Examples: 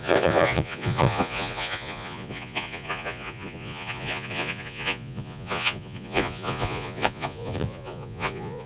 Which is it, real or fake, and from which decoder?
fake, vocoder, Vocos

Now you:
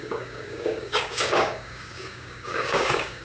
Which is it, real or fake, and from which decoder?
fake, codec, DAC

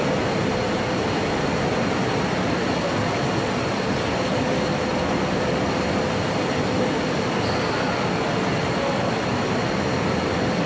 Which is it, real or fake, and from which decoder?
real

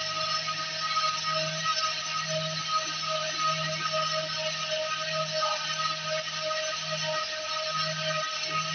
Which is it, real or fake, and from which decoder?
real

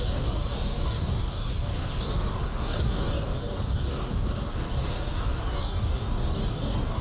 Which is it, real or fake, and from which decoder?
fake, codec, DAC